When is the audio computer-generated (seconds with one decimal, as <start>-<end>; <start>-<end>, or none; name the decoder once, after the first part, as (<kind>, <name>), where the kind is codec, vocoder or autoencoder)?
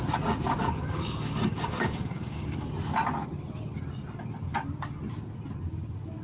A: 0.6-2.7 (codec, DAC)